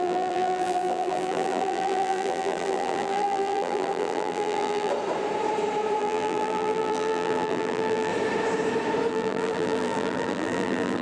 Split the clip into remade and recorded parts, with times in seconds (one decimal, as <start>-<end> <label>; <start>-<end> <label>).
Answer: 0.0-4.9 remade; 4.9-6.0 recorded; 6.0-8.1 remade; 8.1-9.1 recorded; 9.1-11.0 remade